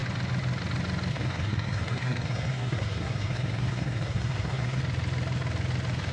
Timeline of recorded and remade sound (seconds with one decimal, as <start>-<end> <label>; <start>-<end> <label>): 0.0-1.1 recorded; 1.1-4.8 remade; 4.8-6.1 recorded